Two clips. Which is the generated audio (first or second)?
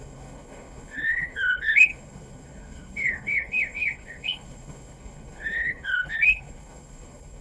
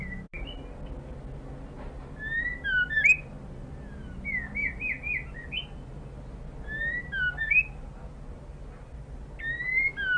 first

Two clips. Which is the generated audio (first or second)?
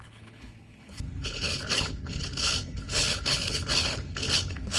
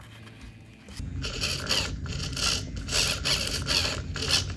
first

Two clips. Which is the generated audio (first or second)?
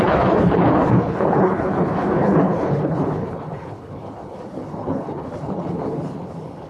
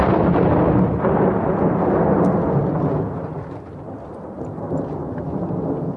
first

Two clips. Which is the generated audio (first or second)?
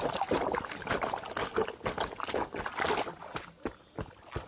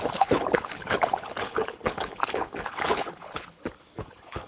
second